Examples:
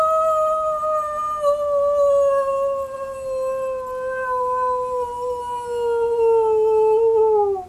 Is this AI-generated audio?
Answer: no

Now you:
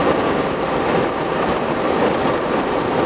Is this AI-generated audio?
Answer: yes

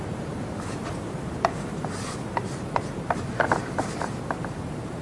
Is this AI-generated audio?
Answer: yes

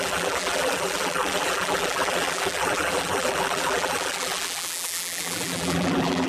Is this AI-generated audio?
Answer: yes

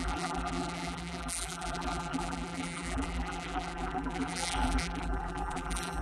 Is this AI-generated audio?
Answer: yes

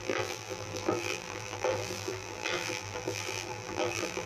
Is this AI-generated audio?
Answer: yes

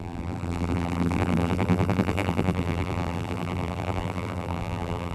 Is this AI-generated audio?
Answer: yes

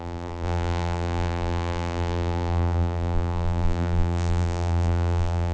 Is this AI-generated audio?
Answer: yes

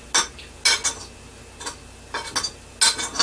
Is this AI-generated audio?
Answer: no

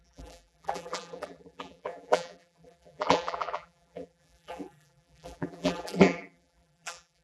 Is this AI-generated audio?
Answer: yes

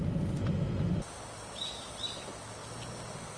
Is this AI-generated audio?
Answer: no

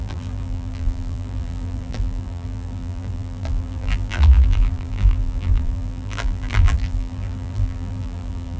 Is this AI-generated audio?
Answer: yes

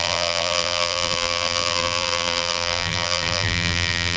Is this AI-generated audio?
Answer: yes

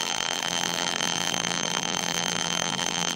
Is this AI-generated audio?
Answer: yes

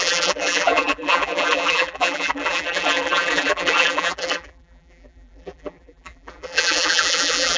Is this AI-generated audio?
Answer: yes